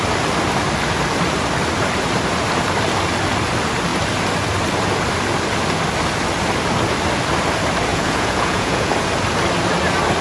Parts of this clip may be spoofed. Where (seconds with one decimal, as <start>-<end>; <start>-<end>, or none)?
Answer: 7.9-8.9